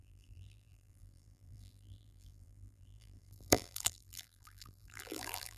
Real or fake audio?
fake